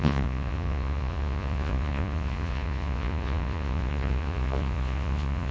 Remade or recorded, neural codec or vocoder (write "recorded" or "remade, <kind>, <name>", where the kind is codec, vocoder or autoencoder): remade, vocoder, Vocos